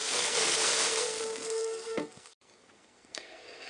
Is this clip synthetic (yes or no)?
yes